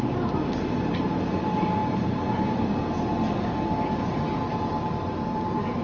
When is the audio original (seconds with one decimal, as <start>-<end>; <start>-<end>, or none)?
0.0-5.8